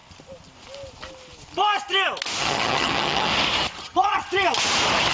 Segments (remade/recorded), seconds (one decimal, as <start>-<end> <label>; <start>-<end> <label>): 0.0-2.4 recorded; 2.4-3.3 remade; 3.3-3.8 recorded; 3.8-4.2 remade; 4.2-5.1 recorded